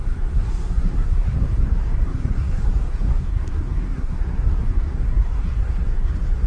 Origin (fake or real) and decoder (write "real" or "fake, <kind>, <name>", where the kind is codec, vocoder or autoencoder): fake, codec, SNAC